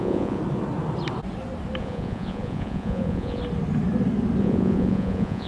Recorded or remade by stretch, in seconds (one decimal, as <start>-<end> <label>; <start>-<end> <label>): 0.0-0.4 remade; 0.4-1.8 recorded; 1.8-3.4 remade; 3.4-4.4 recorded; 4.4-5.5 remade